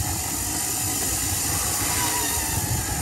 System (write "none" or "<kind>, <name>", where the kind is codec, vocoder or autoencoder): none